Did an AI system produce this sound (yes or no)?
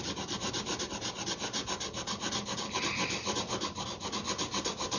no